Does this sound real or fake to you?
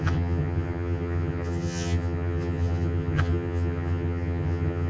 fake